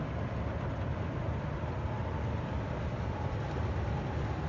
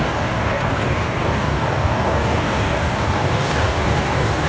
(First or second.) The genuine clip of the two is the first